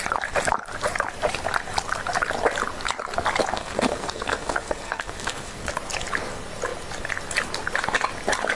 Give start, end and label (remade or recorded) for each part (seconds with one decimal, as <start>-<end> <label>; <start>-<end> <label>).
0.0-3.5 recorded; 3.5-5.7 remade; 5.7-8.6 recorded